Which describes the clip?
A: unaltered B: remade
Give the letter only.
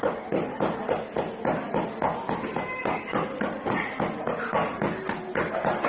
A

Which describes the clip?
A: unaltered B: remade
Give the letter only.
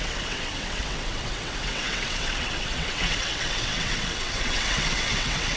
B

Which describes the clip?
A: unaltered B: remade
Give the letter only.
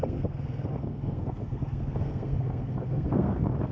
B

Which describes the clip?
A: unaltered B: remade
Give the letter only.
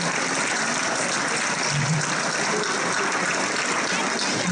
A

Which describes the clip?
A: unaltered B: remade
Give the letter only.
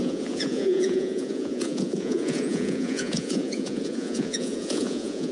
B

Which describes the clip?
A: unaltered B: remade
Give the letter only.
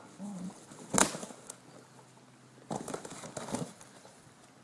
A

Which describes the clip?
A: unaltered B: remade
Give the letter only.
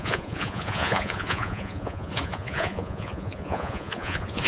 B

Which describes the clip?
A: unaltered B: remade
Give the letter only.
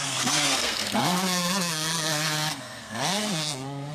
B